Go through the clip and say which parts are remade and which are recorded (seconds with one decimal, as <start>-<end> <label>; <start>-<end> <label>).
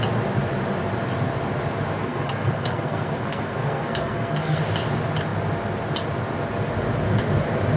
0.0-2.0 recorded; 2.0-4.6 remade; 4.6-7.8 recorded